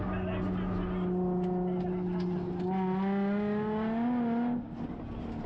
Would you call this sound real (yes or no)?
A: yes